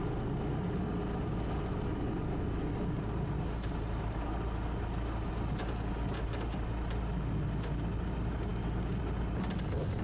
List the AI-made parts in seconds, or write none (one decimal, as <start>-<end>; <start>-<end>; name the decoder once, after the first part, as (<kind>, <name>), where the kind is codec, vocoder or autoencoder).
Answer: 8.5-9.0 (codec, DAC)